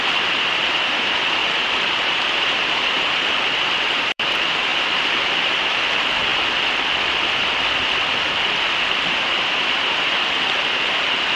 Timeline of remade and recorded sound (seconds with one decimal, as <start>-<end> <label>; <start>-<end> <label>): 0.0-1.4 remade; 1.4-2.1 recorded; 2.1-6.3 remade; 6.3-9.1 recorded; 9.1-11.4 remade